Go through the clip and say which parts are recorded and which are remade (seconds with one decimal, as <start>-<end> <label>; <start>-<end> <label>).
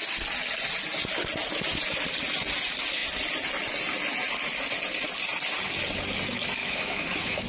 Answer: 0.0-6.6 recorded; 6.6-7.5 remade